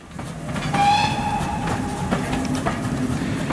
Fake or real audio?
real